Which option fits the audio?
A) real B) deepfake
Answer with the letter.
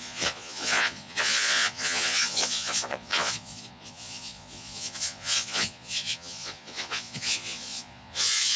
B